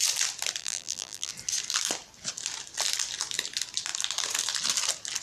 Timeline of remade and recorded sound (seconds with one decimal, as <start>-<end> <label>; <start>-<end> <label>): 0.0-0.6 recorded; 0.6-1.3 remade; 1.3-5.2 recorded